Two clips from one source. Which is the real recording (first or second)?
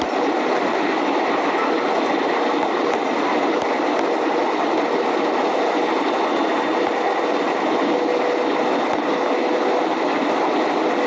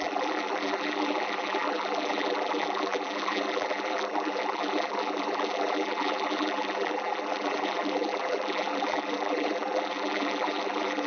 first